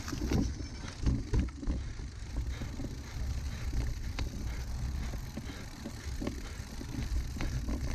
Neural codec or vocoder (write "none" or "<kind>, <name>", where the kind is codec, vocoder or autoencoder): none